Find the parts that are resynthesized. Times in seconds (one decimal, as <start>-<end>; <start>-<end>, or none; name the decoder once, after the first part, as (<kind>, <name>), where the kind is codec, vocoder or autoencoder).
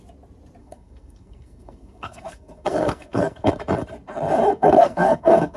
0.6-3.5 (codec, SNAC); 4.5-5.6